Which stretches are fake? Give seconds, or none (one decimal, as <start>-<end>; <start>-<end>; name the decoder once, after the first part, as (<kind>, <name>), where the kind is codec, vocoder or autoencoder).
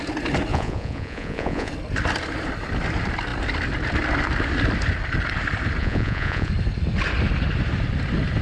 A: 0.5-1.7 (vocoder, Vocos); 5.8-6.5